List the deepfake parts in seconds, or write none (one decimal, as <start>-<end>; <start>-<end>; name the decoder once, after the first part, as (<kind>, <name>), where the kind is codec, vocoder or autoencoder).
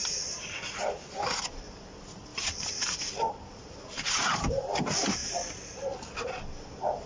none